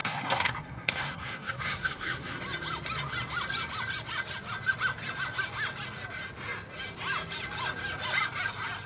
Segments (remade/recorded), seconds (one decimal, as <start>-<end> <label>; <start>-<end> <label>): 0.0-2.4 remade; 2.4-8.9 recorded